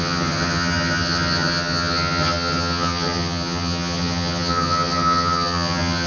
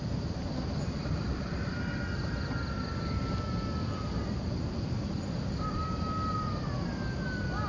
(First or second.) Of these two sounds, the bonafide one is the second